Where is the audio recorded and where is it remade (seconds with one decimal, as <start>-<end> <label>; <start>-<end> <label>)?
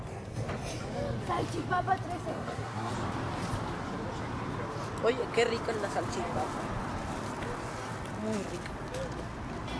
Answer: 0.0-2.3 recorded; 2.3-2.9 remade; 2.9-9.8 recorded